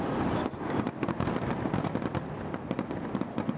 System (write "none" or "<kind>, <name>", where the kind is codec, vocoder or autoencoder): none